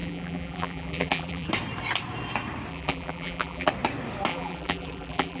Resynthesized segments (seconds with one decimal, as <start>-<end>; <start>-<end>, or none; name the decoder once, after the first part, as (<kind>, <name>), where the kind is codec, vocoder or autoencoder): 0.0-1.5 (vocoder, BigVGAN v2); 2.7-3.7; 4.3-5.4